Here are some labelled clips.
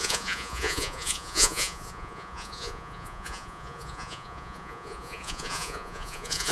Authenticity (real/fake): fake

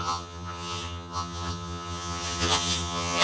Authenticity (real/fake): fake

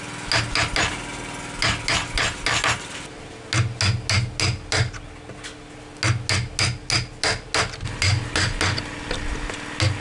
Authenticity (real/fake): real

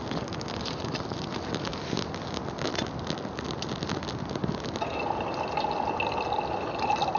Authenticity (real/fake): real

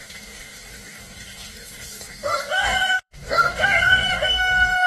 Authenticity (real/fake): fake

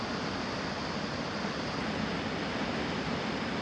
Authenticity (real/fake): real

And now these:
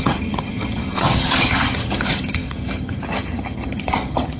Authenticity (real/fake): fake